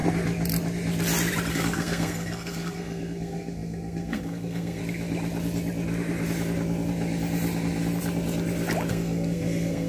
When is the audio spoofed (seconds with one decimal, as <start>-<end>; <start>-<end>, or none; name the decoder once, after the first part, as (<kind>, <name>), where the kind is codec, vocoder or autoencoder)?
1.5-4.8 (codec, SNAC); 8.9-9.9